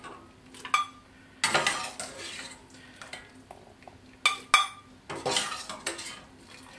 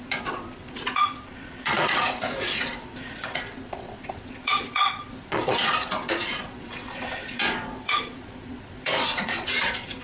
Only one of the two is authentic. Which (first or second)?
first